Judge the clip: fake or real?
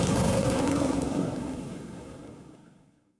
fake